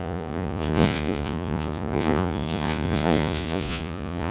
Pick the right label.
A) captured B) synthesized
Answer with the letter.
B